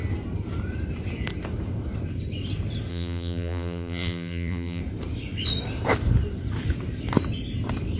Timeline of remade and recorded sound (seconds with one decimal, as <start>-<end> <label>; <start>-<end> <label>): 0.0-2.9 recorded; 2.9-4.8 remade; 4.8-8.0 recorded